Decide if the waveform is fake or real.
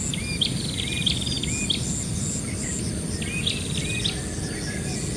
real